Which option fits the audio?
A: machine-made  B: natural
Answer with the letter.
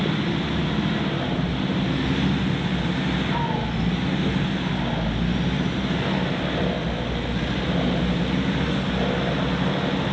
B